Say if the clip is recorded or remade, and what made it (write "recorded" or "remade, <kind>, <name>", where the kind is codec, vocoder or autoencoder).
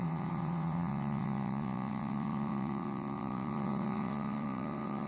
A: remade, vocoder, WaveNeXt